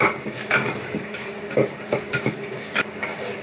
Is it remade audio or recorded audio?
remade